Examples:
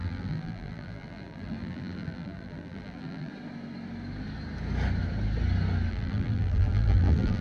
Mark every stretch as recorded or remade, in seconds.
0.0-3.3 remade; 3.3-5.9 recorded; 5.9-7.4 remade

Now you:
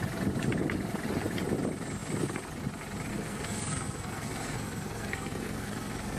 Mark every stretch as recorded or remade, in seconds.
0.0-3.1 recorded; 3.1-6.2 remade

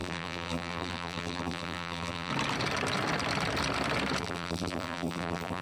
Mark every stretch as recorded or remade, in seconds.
0.0-2.3 remade; 2.3-4.2 recorded; 4.2-5.6 remade